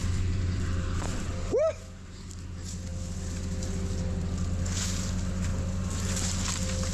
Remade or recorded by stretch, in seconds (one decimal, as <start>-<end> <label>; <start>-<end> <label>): 0.0-1.3 remade; 1.3-6.9 recorded